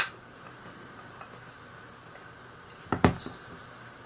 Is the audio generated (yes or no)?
no